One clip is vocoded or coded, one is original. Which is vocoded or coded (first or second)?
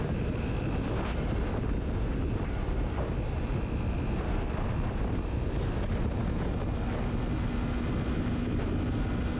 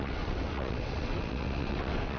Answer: second